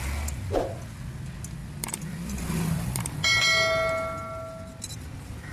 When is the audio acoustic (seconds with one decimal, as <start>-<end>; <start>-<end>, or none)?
0.0-5.5